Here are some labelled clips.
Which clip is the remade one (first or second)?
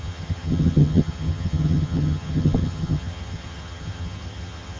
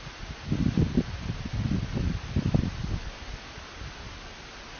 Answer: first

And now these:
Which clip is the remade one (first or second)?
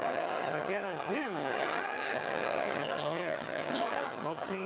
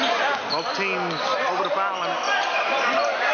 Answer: first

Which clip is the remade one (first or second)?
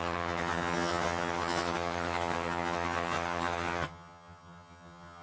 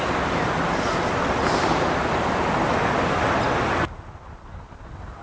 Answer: first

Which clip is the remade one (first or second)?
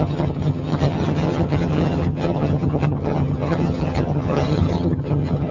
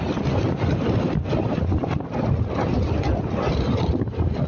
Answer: first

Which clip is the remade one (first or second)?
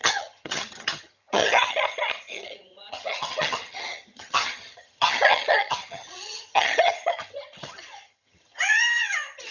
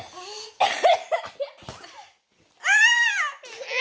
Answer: first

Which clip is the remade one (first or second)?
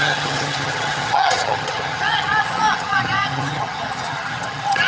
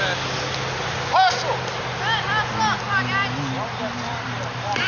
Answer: first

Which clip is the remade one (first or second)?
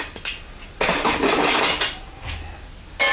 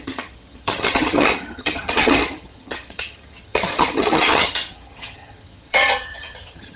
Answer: second